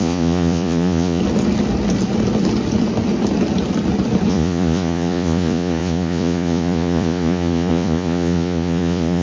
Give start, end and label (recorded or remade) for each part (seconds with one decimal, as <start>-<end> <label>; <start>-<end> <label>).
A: 0.0-1.2 remade; 1.2-4.3 recorded; 4.3-9.2 remade